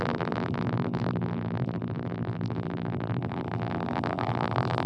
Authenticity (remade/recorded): remade